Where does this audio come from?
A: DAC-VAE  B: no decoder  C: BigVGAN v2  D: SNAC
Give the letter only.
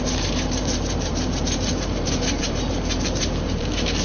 C